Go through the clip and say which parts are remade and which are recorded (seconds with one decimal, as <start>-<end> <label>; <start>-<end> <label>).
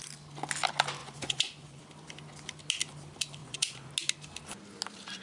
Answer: 0.0-1.0 recorded; 1.0-1.8 remade; 1.8-3.4 recorded; 3.4-3.9 remade; 3.9-5.2 recorded